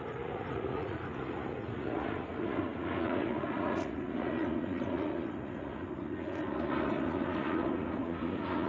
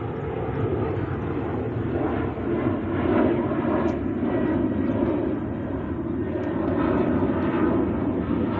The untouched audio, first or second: second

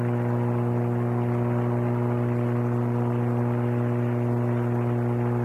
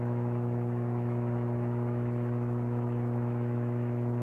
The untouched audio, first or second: first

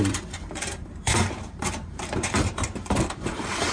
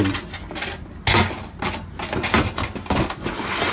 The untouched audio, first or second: second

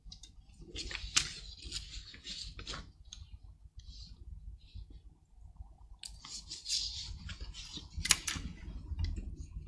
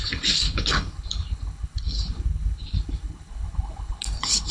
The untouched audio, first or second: first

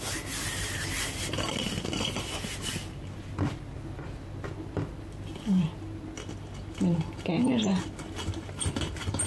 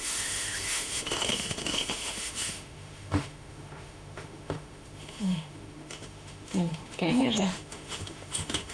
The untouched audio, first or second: first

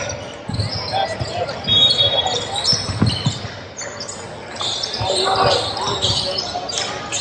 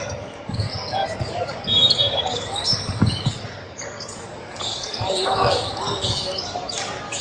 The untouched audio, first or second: first